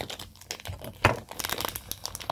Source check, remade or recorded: recorded